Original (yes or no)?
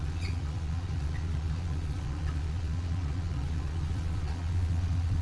no